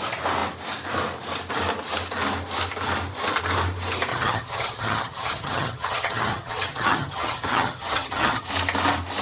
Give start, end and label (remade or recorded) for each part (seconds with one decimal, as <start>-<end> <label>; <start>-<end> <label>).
0.0-4.1 recorded; 4.1-8.5 remade; 8.5-9.2 recorded